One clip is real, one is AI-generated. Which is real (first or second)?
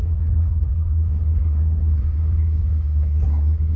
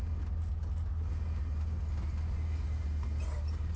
second